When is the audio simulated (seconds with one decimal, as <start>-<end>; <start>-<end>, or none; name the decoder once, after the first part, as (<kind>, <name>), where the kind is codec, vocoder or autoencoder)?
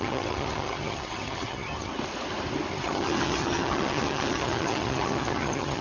0.0-1.9 (vocoder, HiFi-GAN); 2.7-5.8